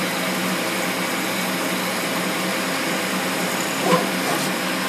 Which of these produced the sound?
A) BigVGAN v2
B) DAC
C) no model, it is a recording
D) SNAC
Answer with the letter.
C